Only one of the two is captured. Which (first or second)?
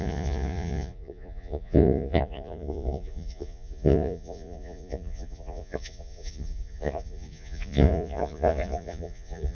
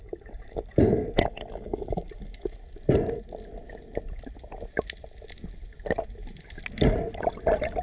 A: second